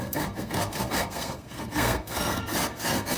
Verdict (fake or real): fake